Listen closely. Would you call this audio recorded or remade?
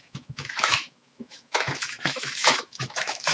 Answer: remade